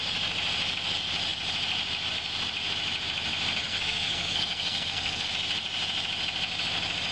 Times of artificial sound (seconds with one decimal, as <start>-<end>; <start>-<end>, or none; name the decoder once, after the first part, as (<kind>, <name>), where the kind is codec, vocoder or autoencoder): 3.6-5.3 (codec, SNAC)